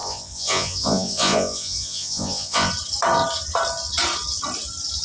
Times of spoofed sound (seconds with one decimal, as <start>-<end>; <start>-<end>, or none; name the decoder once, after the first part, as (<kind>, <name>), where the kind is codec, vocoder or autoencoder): 0.0-2.7 (vocoder, Vocos)